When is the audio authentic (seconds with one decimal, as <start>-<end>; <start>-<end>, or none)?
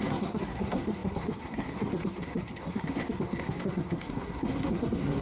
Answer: none